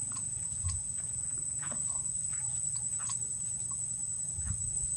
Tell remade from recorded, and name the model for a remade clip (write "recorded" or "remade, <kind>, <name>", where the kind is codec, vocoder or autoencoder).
remade, vocoder, Vocos